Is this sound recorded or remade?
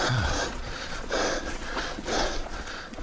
remade